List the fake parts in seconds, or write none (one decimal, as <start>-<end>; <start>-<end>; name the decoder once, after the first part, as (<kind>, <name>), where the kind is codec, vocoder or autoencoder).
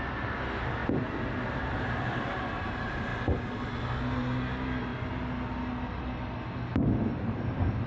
0.0-0.8 (vocoder, BigVGAN v2); 1.6-3.1; 4.0-4.9; 7.0-7.9